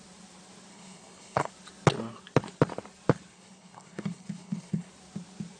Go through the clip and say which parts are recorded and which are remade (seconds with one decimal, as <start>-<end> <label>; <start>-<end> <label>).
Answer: 0.0-0.7 recorded; 0.7-1.5 remade; 1.5-3.3 recorded; 3.3-4.9 remade; 4.9-5.6 recorded